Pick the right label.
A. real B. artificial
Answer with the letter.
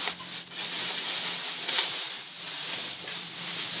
A